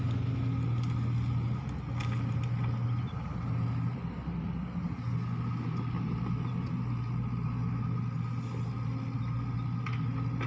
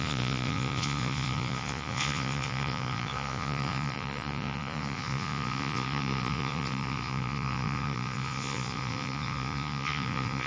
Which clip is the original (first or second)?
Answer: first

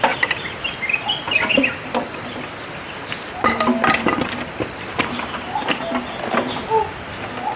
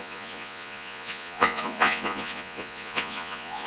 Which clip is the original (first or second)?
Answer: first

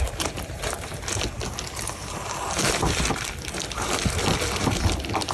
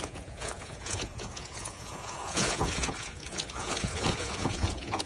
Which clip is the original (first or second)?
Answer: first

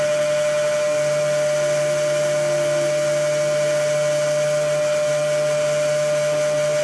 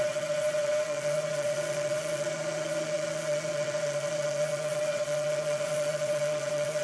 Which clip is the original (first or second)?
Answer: first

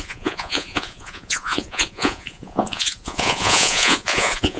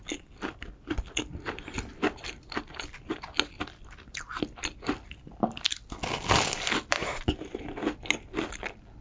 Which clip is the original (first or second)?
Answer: second